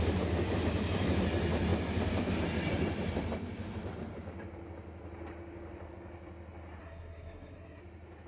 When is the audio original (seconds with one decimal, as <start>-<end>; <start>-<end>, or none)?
0.0-6.8; 7.8-8.3